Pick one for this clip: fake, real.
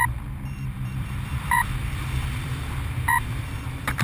fake